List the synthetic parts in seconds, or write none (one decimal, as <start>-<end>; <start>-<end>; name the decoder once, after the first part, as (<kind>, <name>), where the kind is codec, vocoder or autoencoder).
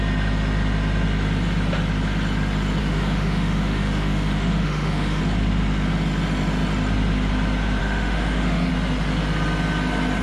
2.8-5.2 (autoencoder, DAC-VAE); 7.8-8.7